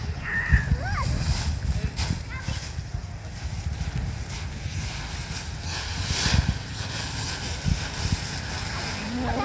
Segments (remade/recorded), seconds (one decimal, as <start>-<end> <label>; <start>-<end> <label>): 0.0-9.4 recorded